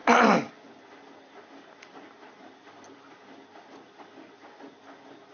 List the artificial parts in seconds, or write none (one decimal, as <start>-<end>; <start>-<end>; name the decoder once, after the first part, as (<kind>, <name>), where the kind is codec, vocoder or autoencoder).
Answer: none